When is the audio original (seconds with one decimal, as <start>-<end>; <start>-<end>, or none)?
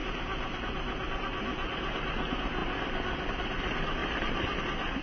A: 0.0-4.0; 4.6-5.0